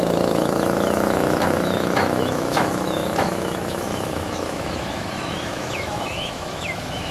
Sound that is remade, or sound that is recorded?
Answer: remade